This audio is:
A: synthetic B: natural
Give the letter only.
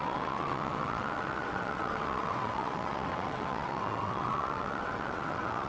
A